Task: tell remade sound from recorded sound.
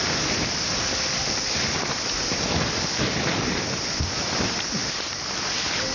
recorded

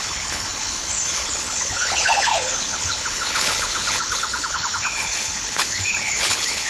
remade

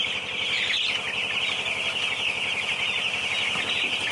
recorded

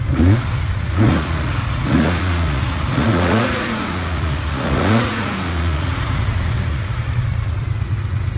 remade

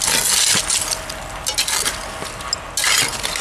recorded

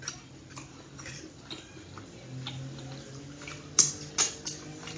recorded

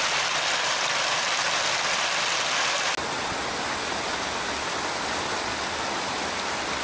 recorded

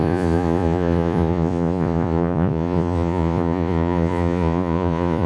remade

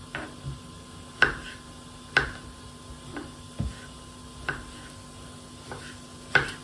recorded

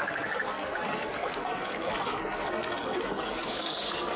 remade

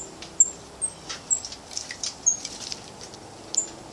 recorded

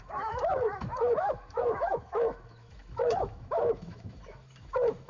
remade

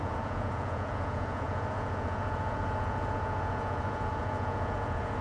remade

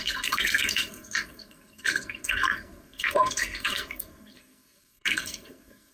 remade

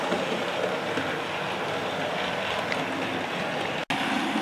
recorded